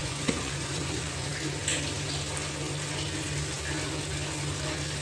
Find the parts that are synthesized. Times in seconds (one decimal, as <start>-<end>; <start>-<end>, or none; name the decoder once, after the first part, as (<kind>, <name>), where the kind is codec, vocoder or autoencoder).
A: 0.0-1.3 (vocoder, Vocos)